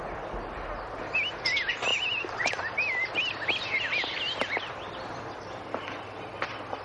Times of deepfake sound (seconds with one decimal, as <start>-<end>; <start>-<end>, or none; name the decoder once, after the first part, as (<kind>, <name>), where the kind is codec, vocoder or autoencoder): 1.9-3.1 (vocoder, BigVGAN v2)